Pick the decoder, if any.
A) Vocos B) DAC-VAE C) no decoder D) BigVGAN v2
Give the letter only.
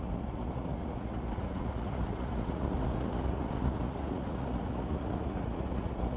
A